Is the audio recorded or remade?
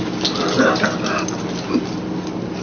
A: recorded